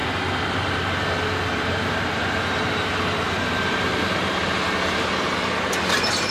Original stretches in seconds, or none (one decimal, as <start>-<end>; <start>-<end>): 0.0-1.5